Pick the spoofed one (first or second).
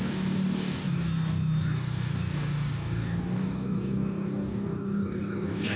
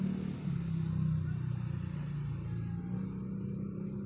first